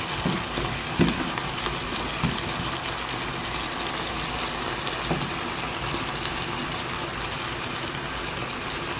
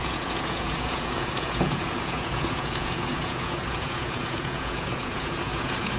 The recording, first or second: first